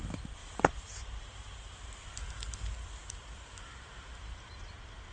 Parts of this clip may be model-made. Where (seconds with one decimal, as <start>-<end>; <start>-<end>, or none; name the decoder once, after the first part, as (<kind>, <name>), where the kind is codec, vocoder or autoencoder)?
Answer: 0.4-1.6 (vocoder, BigVGAN v2)